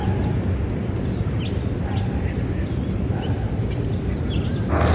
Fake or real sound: real